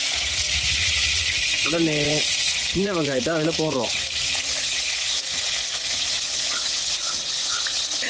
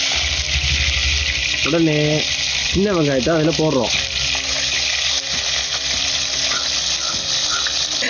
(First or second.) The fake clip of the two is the first